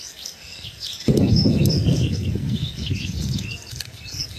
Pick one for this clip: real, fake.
fake